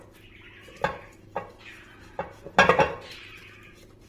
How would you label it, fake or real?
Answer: real